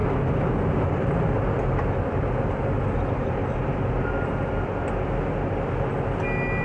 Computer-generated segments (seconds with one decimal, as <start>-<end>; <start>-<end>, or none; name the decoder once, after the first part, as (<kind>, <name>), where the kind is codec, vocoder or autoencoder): none